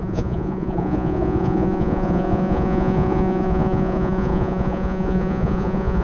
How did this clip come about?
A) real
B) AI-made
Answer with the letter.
B